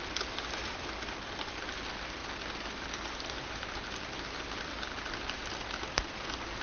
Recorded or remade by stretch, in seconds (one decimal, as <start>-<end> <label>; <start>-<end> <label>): 0.0-6.6 recorded